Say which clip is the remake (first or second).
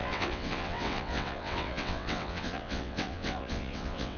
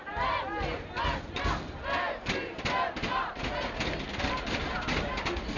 first